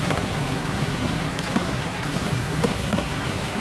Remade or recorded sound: remade